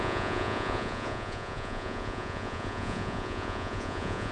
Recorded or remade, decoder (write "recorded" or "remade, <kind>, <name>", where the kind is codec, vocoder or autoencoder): remade, vocoder, Vocos